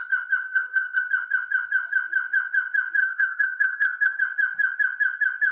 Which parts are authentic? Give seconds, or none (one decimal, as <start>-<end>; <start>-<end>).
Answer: 0.0-0.4; 1.1-3.0; 4.2-5.5